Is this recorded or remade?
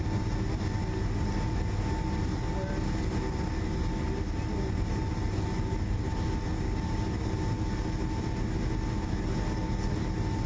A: recorded